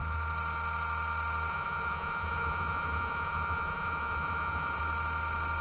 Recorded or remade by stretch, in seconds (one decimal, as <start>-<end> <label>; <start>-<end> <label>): 0.0-1.5 recorded; 1.5-4.8 remade; 4.8-5.6 recorded